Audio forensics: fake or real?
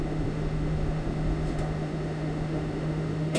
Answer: fake